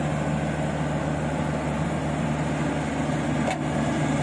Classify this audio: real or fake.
real